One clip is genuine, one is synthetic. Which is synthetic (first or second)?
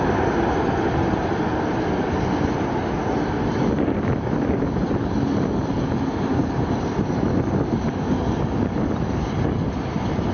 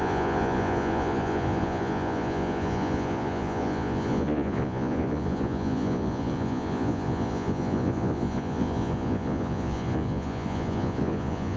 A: second